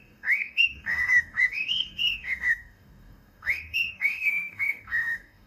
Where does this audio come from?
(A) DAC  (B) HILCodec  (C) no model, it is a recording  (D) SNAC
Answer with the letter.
A